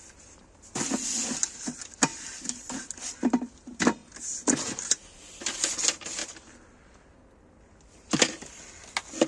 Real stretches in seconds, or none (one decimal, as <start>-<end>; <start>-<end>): 0.0-2.1; 2.8-9.3